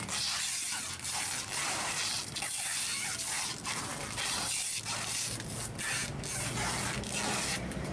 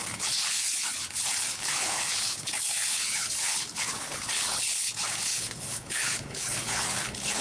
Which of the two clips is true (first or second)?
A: first